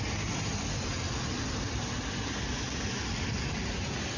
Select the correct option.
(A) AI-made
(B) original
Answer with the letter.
B